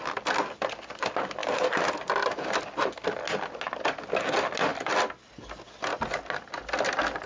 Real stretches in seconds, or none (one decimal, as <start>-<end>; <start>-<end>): 0.0-7.3